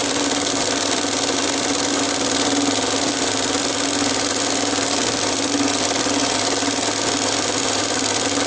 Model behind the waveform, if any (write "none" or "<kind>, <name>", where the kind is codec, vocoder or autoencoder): none